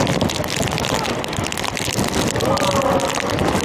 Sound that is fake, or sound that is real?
real